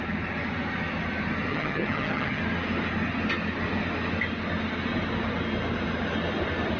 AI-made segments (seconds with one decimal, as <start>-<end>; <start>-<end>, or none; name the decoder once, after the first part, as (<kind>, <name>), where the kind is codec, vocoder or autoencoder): 1.5-2.4 (vocoder, HiFi-GAN)